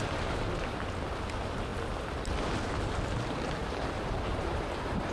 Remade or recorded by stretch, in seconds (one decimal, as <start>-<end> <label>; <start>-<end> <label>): 0.0-3.6 recorded; 3.6-5.1 remade